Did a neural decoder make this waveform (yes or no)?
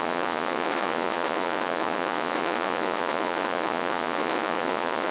yes